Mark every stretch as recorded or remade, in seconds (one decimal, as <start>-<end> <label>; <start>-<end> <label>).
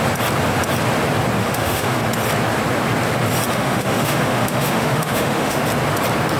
0.0-1.4 recorded; 1.4-2.0 remade; 2.0-3.5 recorded; 3.5-5.6 remade; 5.6-6.4 recorded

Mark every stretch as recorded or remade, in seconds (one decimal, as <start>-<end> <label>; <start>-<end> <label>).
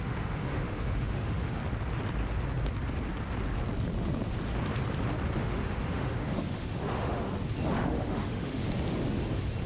0.0-1.6 remade; 1.6-5.4 recorded; 5.4-7.3 remade; 7.3-7.8 recorded; 7.8-8.6 remade; 8.6-9.7 recorded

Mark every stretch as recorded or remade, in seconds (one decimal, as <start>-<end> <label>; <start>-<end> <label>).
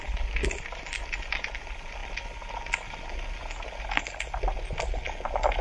0.0-5.6 recorded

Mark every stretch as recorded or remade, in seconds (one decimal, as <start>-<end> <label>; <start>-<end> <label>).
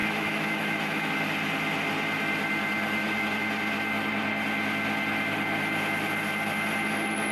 0.0-1.1 remade; 1.1-7.3 recorded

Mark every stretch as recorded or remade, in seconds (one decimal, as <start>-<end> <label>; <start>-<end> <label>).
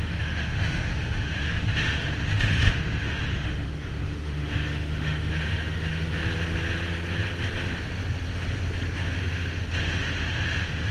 0.0-6.2 remade; 6.2-9.2 recorded; 9.2-10.9 remade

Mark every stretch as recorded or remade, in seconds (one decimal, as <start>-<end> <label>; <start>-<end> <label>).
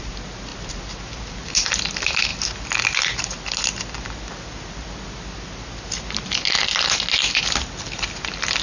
0.0-8.6 recorded